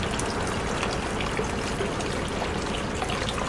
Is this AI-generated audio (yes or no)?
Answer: no